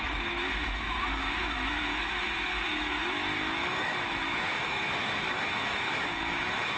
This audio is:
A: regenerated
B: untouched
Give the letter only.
A